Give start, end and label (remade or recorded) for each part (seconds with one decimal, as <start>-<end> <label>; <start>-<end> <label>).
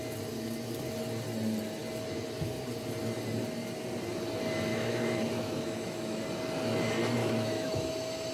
0.0-4.7 recorded; 4.7-6.2 remade; 6.2-7.2 recorded; 7.2-7.9 remade; 7.9-8.3 recorded